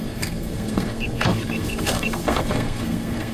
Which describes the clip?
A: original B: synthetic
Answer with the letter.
B